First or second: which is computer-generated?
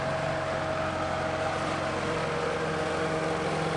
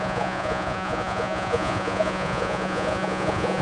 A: second